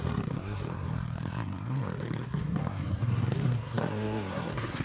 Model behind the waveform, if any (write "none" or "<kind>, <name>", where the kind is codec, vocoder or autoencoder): codec, SNAC